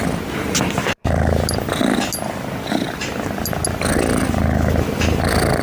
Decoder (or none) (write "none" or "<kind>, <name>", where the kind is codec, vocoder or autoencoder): none